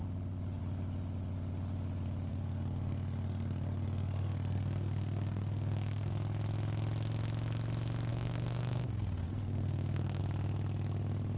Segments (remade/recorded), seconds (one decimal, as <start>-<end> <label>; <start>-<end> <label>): 0.0-2.3 recorded; 2.3-6.1 remade; 6.1-8.1 recorded; 8.1-10.2 remade; 10.2-11.4 recorded